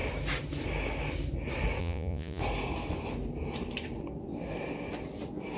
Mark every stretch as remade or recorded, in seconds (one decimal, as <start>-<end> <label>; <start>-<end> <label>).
0.0-1.8 recorded; 1.8-2.4 remade; 2.4-5.6 recorded